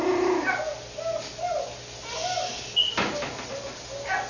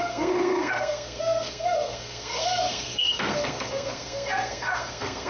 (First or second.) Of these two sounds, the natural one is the first